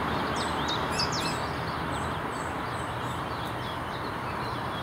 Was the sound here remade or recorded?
recorded